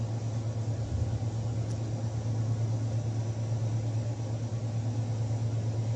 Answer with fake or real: real